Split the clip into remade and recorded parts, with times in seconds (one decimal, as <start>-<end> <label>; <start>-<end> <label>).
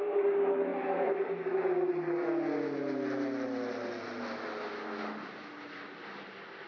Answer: 0.0-6.7 recorded